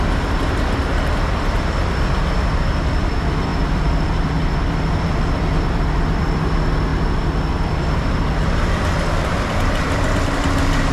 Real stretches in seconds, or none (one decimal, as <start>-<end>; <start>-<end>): 6.9-7.7